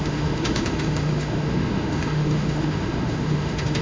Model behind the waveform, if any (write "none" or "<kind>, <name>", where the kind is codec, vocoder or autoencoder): autoencoder, DAC-VAE